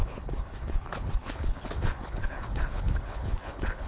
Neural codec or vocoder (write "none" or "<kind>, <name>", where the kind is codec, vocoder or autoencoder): codec, HILCodec